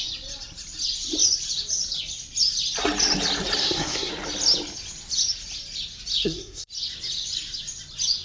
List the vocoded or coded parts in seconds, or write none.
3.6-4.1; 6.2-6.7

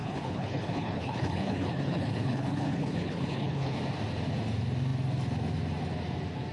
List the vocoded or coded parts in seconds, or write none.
0.0-3.8